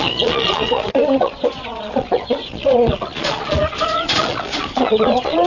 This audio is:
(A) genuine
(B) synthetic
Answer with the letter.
B